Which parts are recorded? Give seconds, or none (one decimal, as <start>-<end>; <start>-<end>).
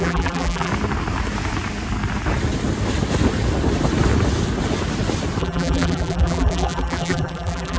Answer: 0.7-5.4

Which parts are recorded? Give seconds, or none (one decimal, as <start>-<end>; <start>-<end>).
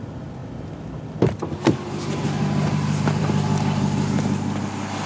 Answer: 0.0-5.1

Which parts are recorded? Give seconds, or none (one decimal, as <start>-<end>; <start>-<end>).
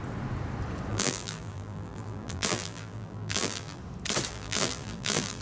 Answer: 0.0-0.9; 3.8-4.3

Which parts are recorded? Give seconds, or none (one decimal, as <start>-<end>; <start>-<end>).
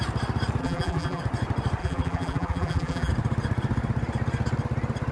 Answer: 0.0-0.6; 1.2-1.8; 3.1-5.1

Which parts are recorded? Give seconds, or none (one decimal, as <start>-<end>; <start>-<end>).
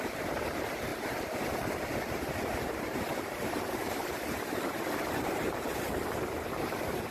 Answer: none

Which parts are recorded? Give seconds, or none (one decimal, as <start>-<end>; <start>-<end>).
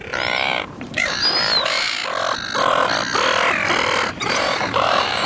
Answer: 2.0-4.1